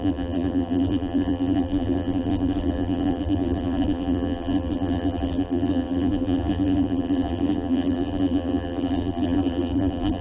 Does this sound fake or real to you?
fake